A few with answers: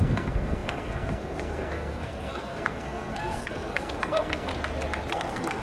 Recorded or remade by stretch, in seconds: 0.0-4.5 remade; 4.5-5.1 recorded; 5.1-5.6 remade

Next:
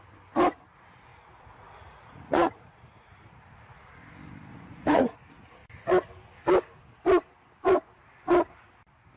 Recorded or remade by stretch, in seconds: 0.0-1.1 recorded; 1.1-3.4 remade; 3.4-4.5 recorded; 4.5-5.1 remade; 5.1-9.2 recorded